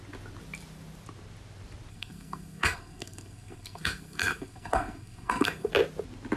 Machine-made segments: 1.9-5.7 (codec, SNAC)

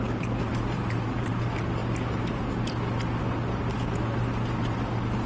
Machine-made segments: 0.5-1.3 (vocoder, BigVGAN v2)

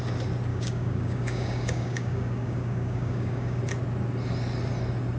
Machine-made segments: 0.5-3.6 (codec, DAC)

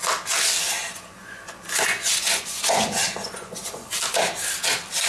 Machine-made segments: 0.8-3.9 (vocoder, Vocos)

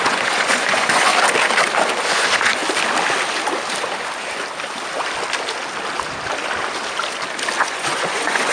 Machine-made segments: 0.0-1.1 (vocoder, Vocos); 2.1-2.6; 7.6-8.5